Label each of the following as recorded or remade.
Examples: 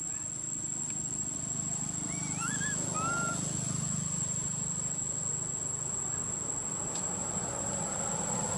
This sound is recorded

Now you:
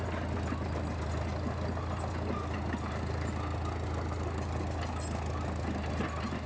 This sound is recorded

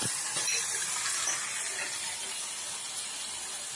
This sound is recorded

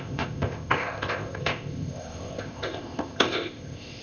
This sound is remade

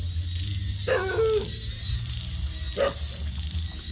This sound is recorded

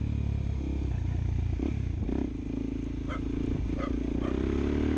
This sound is recorded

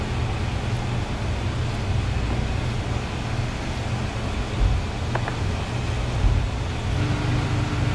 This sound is recorded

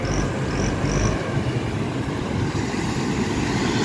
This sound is recorded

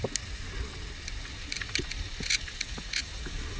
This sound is recorded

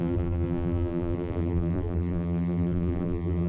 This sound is remade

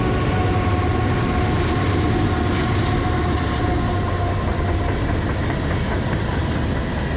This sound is recorded